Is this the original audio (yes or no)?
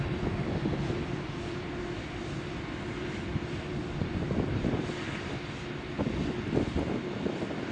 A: no